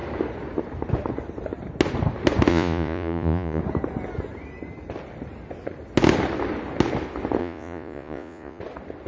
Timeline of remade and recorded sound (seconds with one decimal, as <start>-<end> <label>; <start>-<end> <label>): 0.0-2.5 recorded; 2.5-3.6 remade; 3.6-7.4 recorded; 7.4-8.6 remade; 8.6-9.1 recorded